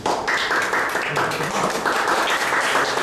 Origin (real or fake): real